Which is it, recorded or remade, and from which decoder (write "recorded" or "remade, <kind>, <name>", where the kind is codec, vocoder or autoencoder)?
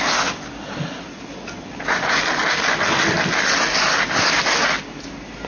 recorded